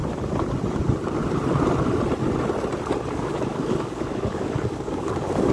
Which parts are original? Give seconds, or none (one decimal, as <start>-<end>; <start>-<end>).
0.0-3.1